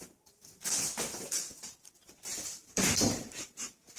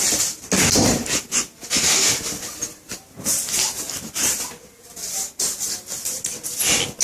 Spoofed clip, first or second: first